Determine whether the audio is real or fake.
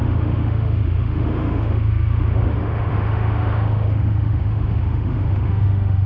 fake